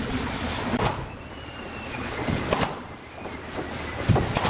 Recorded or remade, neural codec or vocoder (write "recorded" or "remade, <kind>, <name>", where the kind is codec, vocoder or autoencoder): recorded